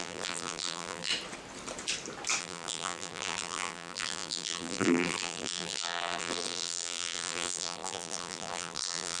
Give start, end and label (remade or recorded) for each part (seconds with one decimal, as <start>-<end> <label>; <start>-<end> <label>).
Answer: 0.0-1.1 remade; 1.1-2.4 recorded; 2.4-9.2 remade

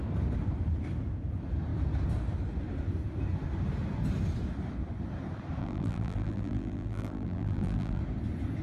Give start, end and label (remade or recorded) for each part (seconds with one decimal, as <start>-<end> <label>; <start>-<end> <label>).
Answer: 0.0-5.6 recorded; 5.6-8.0 remade; 8.0-8.6 recorded

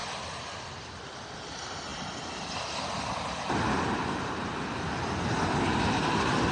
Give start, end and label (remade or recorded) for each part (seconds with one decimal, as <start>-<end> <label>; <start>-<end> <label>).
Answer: 0.0-6.5 recorded

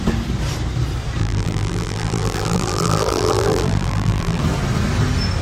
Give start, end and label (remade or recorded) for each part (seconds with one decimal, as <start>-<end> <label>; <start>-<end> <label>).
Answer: 0.0-1.2 recorded; 1.2-4.4 remade; 4.4-5.4 recorded

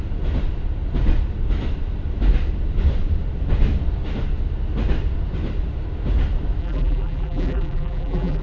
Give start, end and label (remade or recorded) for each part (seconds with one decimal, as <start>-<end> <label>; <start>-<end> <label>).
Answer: 0.0-6.6 recorded; 6.6-8.4 remade

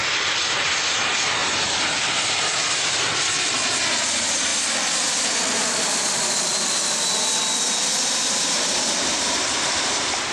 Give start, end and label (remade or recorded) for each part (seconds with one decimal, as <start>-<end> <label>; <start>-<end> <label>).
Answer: 0.0-0.7 remade; 0.7-1.4 recorded; 1.4-3.4 remade; 3.4-10.3 recorded

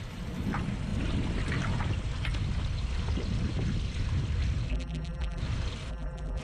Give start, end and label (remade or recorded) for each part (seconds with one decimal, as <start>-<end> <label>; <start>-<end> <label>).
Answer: 0.0-4.7 recorded; 4.7-5.4 remade; 5.4-5.9 recorded; 5.9-6.4 remade